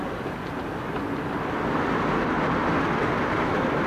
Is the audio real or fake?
real